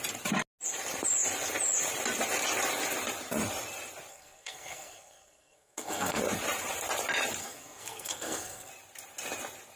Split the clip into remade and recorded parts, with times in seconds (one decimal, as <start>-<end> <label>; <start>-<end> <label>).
0.0-4.1 recorded; 4.1-6.2 remade; 6.2-7.4 recorded; 7.4-8.7 remade; 8.7-9.8 recorded